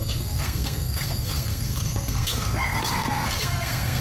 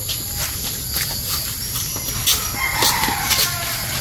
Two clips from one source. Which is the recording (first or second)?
second